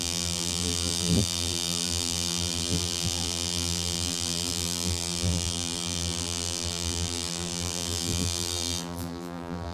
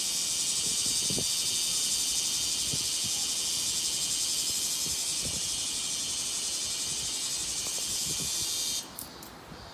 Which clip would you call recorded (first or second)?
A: second